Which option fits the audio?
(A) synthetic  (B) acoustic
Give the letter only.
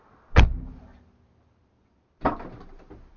B